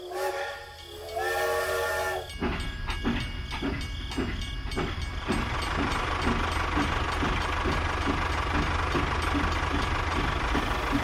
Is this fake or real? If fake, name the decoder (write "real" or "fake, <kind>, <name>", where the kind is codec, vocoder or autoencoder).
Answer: real